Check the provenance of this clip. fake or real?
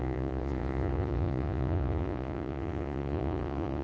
fake